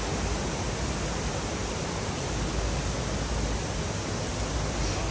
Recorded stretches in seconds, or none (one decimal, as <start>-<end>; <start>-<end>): 0.0-5.1